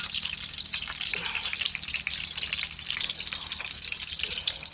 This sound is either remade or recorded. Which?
recorded